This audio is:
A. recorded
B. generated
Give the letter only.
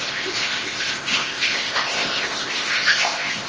B